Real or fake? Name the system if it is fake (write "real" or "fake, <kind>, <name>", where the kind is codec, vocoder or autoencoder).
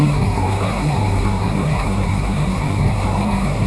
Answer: fake, codec, SNAC